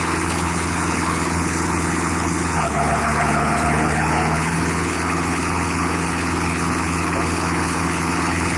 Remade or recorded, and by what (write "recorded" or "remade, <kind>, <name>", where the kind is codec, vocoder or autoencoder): remade, codec, HILCodec